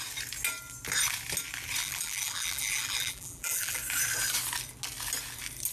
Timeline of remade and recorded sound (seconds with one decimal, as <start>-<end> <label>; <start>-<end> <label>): 0.0-1.8 recorded; 1.8-3.8 remade; 3.8-5.7 recorded

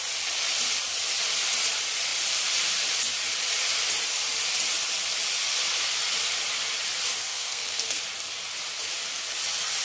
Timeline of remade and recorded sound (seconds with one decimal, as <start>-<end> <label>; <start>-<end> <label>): 0.0-7.3 recorded; 7.3-8.0 remade; 8.0-9.8 recorded

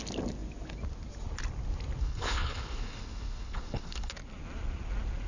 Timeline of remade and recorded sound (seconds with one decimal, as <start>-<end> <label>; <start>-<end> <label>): 0.0-2.0 recorded; 2.0-4.1 remade; 4.1-5.3 recorded

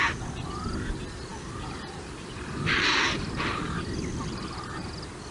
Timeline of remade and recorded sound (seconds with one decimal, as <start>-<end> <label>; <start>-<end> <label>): 0.0-1.3 recorded; 1.3-4.5 remade; 4.5-5.3 recorded

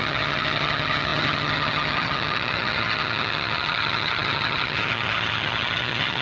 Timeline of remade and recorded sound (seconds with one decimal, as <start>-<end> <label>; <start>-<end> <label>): 0.0-6.2 remade

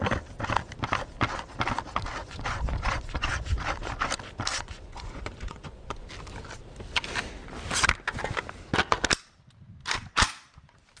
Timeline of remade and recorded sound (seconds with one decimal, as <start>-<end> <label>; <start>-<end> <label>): 0.0-2.2 recorded; 2.2-3.6 remade; 3.6-4.5 recorded; 4.5-6.1 remade; 6.1-11.0 recorded

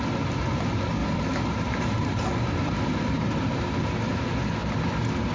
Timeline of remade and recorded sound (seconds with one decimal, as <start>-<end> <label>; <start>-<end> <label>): 0.0-1.0 recorded; 1.0-3.4 remade; 3.4-5.3 recorded

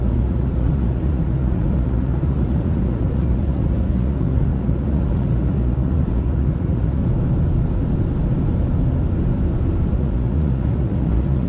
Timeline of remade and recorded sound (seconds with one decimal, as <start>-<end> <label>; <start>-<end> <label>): 0.0-7.0 remade; 7.0-9.9 recorded; 9.9-11.5 remade